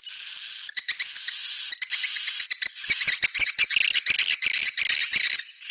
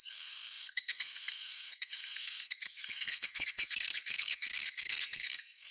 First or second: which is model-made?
second